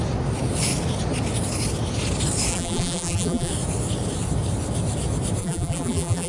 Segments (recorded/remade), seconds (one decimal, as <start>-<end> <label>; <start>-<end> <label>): 0.0-2.5 recorded; 2.5-3.5 remade; 3.5-5.4 recorded; 5.4-6.3 remade